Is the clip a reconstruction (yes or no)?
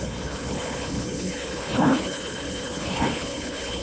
yes